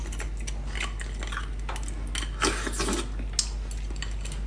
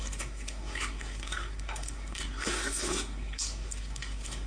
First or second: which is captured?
first